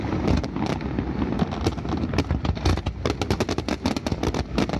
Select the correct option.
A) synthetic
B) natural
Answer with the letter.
B